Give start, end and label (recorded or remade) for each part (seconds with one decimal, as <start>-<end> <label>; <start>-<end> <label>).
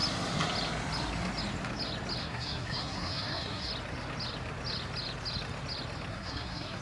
0.0-2.2 recorded; 2.2-3.7 remade; 3.7-6.1 recorded; 6.1-6.8 remade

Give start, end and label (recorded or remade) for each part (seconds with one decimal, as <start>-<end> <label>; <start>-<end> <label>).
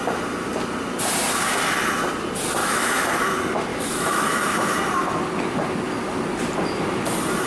0.0-2.6 recorded; 2.6-3.3 remade; 3.3-3.7 recorded; 3.7-4.8 remade; 4.8-7.5 recorded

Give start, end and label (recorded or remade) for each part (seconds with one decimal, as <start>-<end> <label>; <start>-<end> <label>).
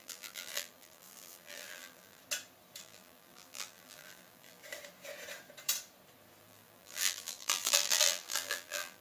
0.0-2.2 remade; 2.2-2.8 recorded; 2.8-4.6 remade; 4.6-6.4 recorded; 6.4-9.0 remade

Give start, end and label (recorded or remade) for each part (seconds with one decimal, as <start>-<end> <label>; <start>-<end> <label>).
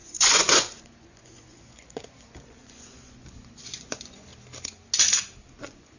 0.0-4.3 remade; 4.3-5.6 recorded; 5.6-6.0 remade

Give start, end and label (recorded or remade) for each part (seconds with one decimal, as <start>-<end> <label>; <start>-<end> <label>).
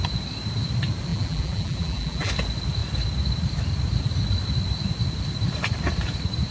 0.0-1.1 recorded; 1.1-2.3 remade; 2.3-6.5 recorded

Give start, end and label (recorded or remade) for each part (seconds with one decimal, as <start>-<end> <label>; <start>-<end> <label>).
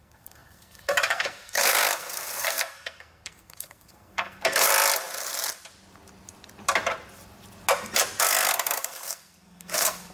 0.0-4.7 remade; 4.7-8.2 recorded; 8.2-10.1 remade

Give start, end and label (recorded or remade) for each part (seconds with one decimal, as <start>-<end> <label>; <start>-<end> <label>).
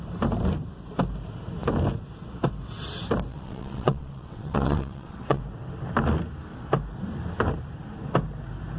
0.0-3.3 recorded; 3.3-5.4 remade; 5.4-8.8 recorded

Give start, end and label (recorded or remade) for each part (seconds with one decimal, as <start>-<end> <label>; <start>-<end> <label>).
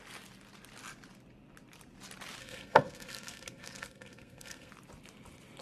0.0-2.4 recorded; 2.4-4.7 remade; 4.7-5.6 recorded